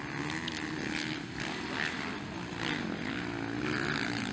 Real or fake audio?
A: real